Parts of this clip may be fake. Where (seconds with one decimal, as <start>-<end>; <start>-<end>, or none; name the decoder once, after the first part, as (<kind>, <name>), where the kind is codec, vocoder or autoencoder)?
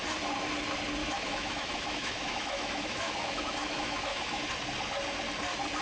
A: 1.0-4.5 (autoencoder, DAC-VAE)